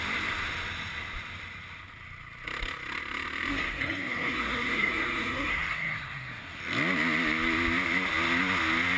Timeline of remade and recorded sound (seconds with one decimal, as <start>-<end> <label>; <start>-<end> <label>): 0.0-3.5 recorded; 3.5-6.6 remade; 6.6-9.0 recorded